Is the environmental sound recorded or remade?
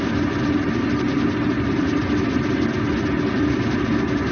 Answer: recorded